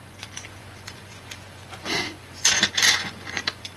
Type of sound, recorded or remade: remade